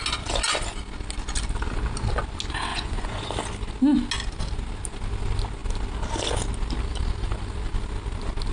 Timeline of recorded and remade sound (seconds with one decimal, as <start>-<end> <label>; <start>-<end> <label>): 0.0-2.7 recorded; 2.7-3.3 remade; 3.3-8.5 recorded